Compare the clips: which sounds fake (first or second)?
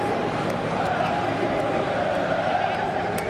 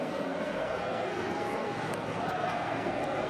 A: second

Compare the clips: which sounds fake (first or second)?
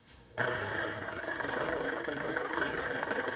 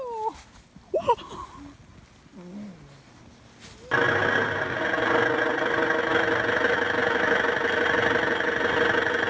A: first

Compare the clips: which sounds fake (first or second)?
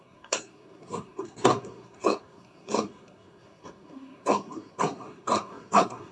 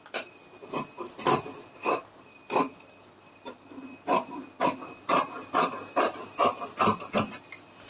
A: first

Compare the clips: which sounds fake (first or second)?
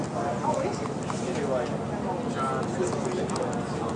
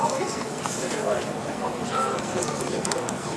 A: second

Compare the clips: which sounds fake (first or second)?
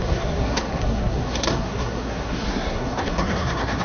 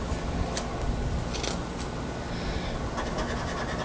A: first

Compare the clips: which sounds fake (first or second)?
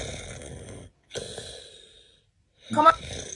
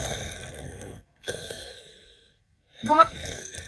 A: second